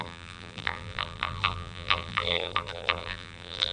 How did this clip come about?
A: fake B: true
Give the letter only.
A